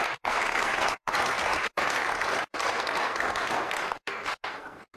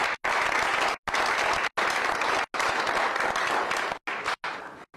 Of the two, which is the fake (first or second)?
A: first